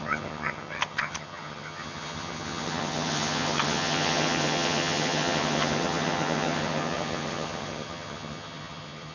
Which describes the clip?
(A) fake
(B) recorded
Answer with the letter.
A